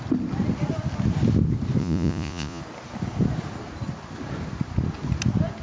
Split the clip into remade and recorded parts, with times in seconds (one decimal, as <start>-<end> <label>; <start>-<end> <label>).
0.0-1.8 recorded; 1.8-2.6 remade; 2.6-5.6 recorded